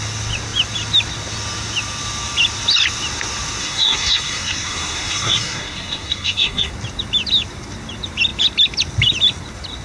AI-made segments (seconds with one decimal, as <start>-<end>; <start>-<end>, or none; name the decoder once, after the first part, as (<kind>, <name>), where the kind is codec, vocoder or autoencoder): 3.6-6.7 (codec, SNAC)